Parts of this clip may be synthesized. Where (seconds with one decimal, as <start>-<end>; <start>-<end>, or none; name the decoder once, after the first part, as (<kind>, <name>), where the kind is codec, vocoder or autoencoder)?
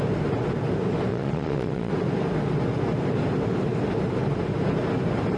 1.1-1.9 (vocoder, Vocos)